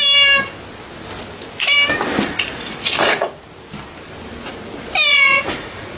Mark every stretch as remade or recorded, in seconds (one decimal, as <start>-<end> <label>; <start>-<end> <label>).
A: 0.0-2.2 recorded; 2.2-3.3 remade; 3.3-5.1 recorded; 5.1-6.0 remade